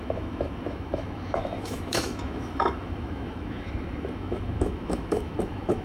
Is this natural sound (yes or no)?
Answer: no